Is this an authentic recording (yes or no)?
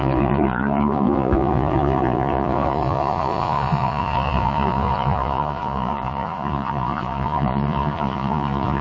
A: no